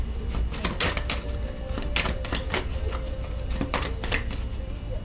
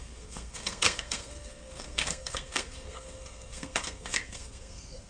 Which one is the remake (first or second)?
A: second